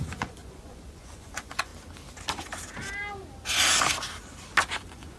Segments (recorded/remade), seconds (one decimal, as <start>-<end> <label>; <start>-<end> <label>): 0.0-1.7 remade; 1.7-4.8 recorded; 4.8-5.2 remade